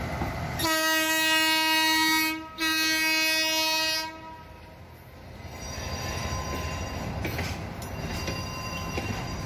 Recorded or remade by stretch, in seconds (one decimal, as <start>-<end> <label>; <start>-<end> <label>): 0.0-9.5 recorded